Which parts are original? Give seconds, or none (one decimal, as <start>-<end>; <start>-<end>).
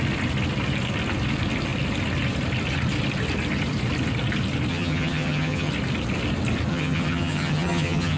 0.0-4.7; 5.7-6.7